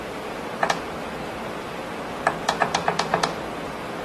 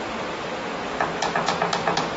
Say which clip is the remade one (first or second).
first